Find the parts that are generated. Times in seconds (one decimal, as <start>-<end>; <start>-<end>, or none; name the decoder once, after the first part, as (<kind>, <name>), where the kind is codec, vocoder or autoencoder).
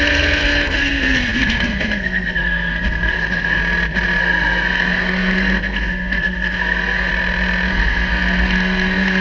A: 0.0-3.6 (codec, SNAC); 4.2-7.1; 7.7-9.2